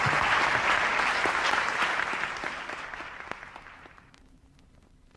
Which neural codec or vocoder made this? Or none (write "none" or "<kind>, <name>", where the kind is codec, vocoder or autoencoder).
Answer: none